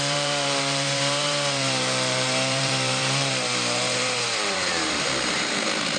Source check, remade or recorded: remade